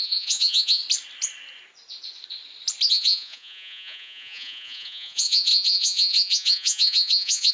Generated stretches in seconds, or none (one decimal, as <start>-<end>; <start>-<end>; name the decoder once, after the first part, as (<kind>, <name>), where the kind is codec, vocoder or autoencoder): 0.0-0.8 (vocoder, Vocos); 2.9-7.5